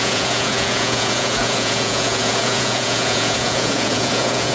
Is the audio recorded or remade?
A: remade